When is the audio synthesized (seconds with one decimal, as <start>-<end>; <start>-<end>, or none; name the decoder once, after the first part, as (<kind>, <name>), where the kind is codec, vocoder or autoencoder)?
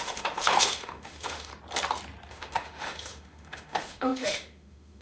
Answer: 0.0-1.5 (autoencoder, DAC-VAE); 2.3-5.0